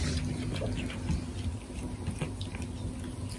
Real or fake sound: real